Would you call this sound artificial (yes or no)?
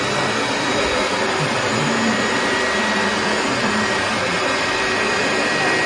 yes